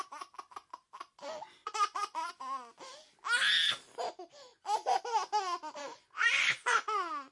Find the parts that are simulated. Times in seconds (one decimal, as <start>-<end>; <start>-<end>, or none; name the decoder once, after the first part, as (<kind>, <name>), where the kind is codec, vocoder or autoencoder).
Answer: 1.6-2.3 (vocoder, Vocos); 4.5-5.0; 5.8-7.3